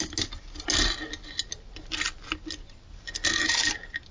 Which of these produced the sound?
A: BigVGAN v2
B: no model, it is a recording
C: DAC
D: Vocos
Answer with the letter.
B